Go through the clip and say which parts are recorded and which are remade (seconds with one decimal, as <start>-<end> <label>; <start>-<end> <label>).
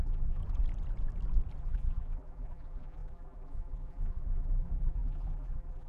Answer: 0.0-0.4 remade; 0.4-1.6 recorded; 1.6-5.9 remade